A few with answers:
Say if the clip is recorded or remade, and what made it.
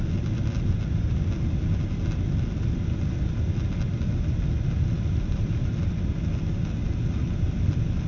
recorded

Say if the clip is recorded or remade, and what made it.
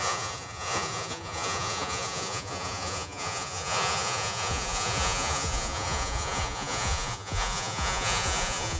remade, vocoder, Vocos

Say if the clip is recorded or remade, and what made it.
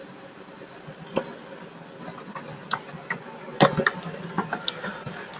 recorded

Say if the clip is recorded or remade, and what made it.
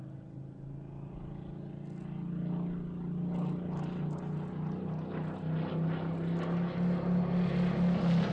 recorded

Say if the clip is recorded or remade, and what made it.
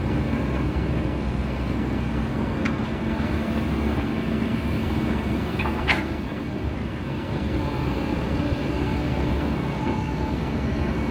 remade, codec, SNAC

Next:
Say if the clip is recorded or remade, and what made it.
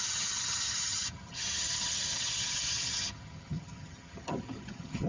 remade, vocoder, HiFi-GAN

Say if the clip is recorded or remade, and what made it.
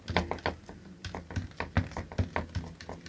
recorded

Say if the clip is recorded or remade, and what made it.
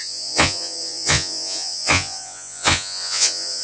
remade, vocoder, Vocos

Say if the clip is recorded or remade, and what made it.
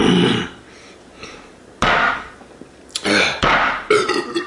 recorded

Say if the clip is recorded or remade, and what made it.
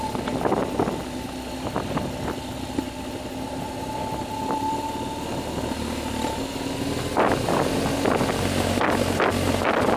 recorded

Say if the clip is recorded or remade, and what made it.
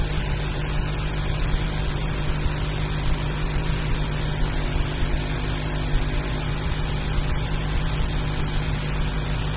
remade, vocoder, BigVGAN v2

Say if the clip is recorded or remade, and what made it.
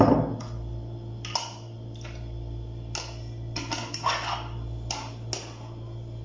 recorded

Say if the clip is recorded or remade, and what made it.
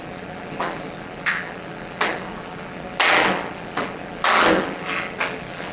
recorded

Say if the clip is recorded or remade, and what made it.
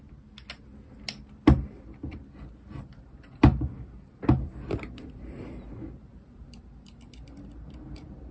recorded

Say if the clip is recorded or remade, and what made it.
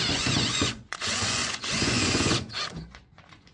remade, vocoder, Vocos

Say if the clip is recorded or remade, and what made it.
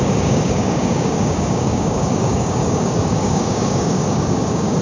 remade, codec, DAC